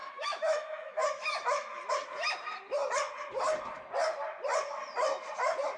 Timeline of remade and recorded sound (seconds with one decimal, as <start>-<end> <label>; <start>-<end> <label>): 0.0-1.9 remade; 1.9-5.8 recorded